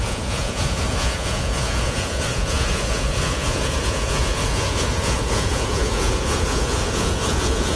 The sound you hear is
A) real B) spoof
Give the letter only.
B